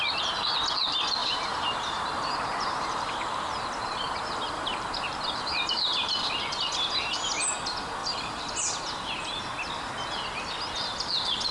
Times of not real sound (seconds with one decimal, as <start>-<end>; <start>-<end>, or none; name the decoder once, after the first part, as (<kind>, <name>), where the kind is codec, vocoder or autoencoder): 1.2-6.1 (vocoder, BigVGAN v2); 8.0-8.5